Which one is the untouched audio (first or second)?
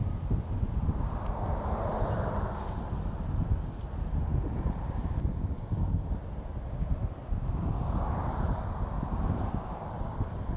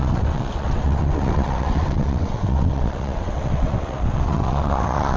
first